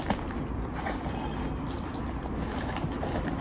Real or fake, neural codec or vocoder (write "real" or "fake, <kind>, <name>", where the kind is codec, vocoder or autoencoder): real